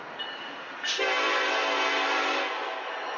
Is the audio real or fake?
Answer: real